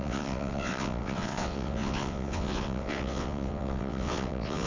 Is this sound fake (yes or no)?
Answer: yes